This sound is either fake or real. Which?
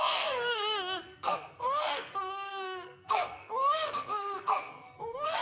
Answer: fake